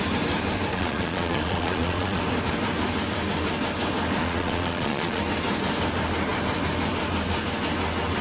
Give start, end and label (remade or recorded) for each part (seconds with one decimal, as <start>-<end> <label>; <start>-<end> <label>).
0.0-0.7 recorded; 0.7-2.2 remade; 2.2-4.2 recorded; 4.2-5.2 remade; 5.2-8.2 recorded